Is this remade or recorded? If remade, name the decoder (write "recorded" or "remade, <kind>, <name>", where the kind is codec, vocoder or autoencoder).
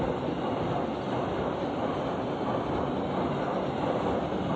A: recorded